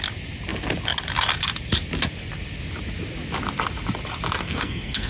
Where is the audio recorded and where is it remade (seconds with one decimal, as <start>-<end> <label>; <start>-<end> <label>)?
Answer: 0.0-4.4 recorded; 4.4-5.1 remade